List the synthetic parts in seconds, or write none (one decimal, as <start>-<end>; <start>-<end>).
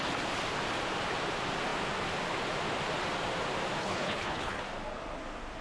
3.8-4.6